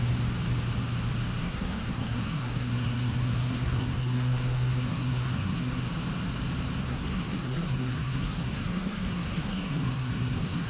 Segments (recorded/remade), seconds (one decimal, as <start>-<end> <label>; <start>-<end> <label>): 0.0-1.4 recorded; 1.4-5.8 remade; 5.8-6.8 recorded; 6.8-10.7 remade